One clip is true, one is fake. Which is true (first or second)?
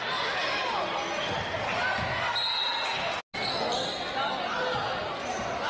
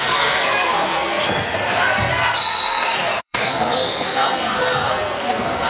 first